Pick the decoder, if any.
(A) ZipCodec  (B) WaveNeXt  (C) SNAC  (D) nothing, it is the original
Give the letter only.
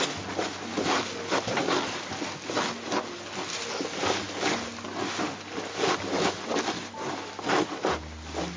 D